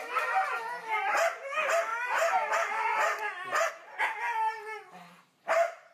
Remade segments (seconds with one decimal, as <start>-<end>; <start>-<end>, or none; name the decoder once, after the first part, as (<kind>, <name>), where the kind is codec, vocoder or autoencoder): none